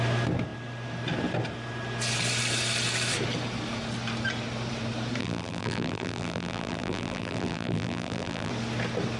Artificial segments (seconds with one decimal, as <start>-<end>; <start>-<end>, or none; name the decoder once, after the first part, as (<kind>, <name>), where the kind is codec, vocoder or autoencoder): 5.2-8.5 (vocoder, BigVGAN v2)